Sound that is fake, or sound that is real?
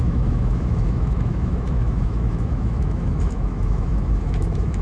fake